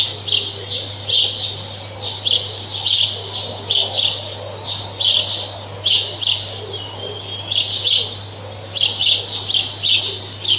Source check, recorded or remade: recorded